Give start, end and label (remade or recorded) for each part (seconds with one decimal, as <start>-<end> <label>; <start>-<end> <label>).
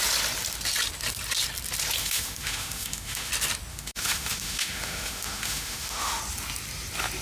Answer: 0.0-2.0 recorded; 2.0-3.3 remade; 3.3-3.7 recorded; 3.7-6.2 remade; 6.2-7.2 recorded